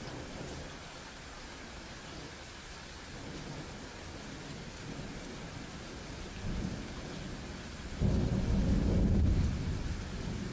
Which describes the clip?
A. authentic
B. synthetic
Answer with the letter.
A